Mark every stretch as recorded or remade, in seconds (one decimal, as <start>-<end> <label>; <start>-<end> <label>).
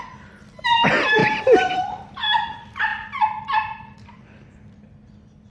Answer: 0.0-1.2 recorded; 1.2-2.2 remade; 2.2-2.9 recorded; 2.9-4.2 remade; 4.2-5.5 recorded